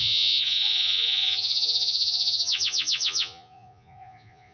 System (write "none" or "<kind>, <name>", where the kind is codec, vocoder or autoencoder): vocoder, Vocos